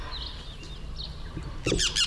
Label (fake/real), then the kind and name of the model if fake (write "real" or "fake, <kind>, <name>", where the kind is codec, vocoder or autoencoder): real